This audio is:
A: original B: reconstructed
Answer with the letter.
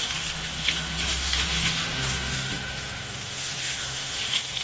B